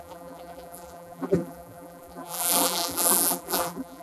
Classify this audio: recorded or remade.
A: remade